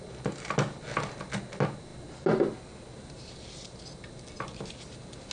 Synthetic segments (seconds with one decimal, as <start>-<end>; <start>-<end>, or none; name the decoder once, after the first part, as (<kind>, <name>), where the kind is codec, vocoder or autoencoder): none